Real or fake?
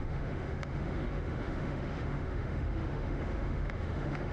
fake